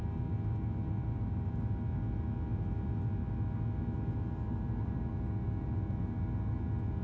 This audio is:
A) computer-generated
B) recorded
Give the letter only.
B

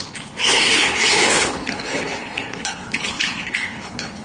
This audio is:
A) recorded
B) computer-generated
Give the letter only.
B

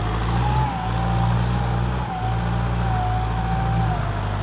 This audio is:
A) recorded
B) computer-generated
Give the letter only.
A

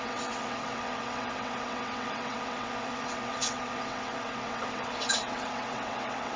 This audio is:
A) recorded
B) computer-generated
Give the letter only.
B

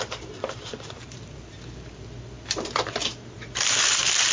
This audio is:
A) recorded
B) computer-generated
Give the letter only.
B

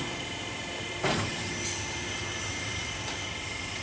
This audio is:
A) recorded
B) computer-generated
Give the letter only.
B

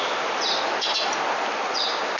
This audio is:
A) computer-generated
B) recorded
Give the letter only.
B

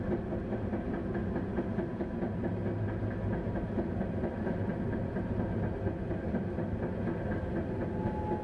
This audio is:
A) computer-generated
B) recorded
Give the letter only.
B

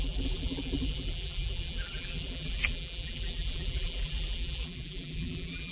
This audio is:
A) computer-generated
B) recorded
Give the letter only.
A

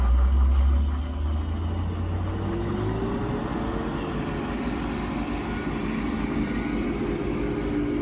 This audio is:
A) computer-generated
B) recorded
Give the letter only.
B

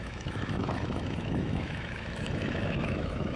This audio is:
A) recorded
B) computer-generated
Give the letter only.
B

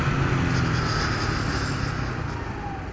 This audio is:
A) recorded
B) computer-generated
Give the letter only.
A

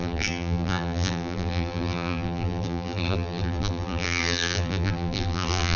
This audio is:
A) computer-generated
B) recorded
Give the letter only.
A